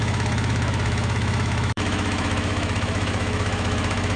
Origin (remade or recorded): remade